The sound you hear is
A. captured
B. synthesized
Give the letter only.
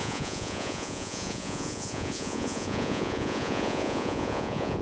B